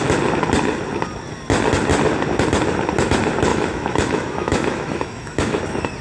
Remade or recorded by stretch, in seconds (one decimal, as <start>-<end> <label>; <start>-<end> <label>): 0.0-3.5 recorded; 3.5-5.6 remade; 5.6-6.0 recorded